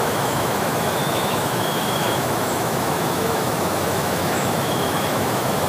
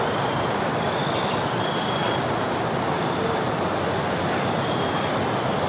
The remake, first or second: first